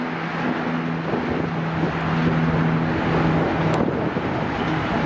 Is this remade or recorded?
recorded